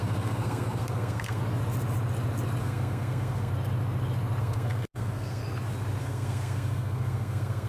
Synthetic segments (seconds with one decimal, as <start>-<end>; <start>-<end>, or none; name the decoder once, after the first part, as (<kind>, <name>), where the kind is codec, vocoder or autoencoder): 0.0-1.4 (codec, SNAC); 2.6-3.5; 4.4-5.4; 6.0-7.7